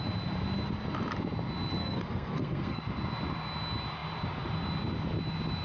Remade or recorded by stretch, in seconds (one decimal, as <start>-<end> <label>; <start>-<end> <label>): 0.0-1.8 recorded; 1.8-2.8 remade; 2.8-5.6 recorded